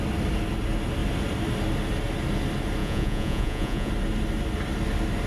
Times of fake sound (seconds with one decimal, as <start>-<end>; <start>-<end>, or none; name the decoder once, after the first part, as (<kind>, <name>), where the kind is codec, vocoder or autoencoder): 2.8-3.9 (vocoder, Vocos)